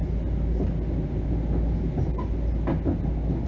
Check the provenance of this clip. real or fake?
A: real